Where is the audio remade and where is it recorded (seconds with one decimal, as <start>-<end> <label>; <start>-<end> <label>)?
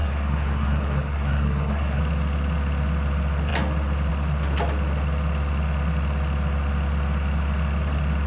0.0-2.0 remade; 2.0-8.3 recorded